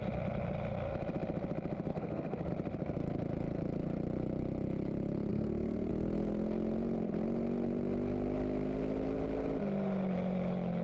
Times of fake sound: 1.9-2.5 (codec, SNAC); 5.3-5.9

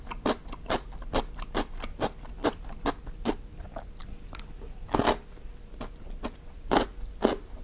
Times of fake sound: none

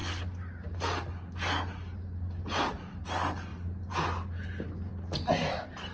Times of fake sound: none

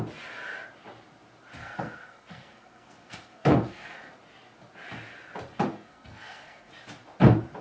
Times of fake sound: 1.6-4.1 (codec, SNAC); 5.7-6.7

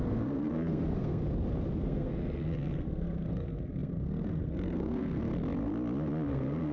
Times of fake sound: 0.0-1.2 (codec, SNAC); 1.8-5.3; 6.3-6.7

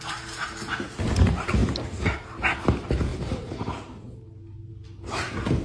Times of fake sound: none

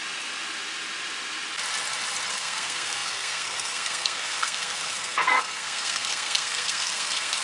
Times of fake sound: 2.3-7.4 (codec, SNAC)